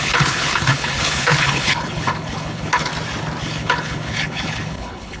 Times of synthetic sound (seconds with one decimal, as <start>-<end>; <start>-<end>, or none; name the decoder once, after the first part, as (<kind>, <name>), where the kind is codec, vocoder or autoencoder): 0.0-2.9 (codec, HILCodec); 3.4-5.2